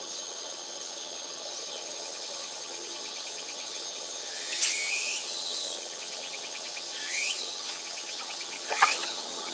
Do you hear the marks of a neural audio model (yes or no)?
yes